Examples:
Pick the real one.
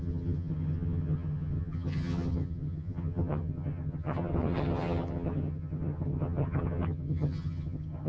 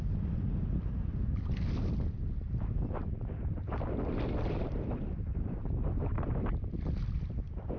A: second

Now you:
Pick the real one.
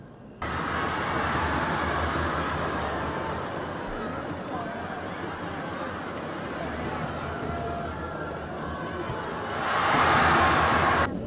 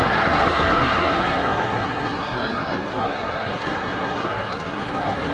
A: first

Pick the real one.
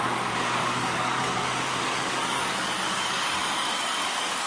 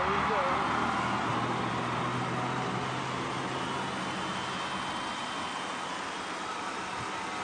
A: second